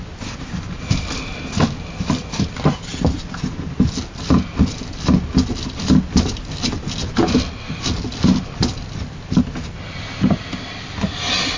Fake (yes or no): no